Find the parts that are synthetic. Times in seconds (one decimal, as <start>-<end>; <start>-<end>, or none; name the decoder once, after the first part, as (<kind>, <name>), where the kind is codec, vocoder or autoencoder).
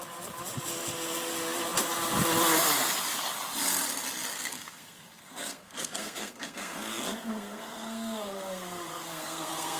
4.3-9.8 (codec, SNAC)